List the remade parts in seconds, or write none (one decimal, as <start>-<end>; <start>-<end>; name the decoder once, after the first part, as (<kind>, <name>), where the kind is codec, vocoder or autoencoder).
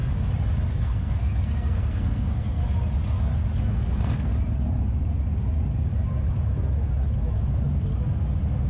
0.7-2.6 (codec, SNAC); 3.6-4.3